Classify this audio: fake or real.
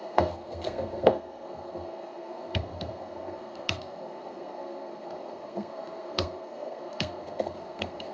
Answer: fake